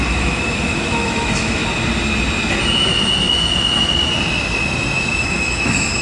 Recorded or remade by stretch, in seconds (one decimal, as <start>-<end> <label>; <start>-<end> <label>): 0.0-1.6 remade; 1.6-5.2 recorded; 5.2-6.0 remade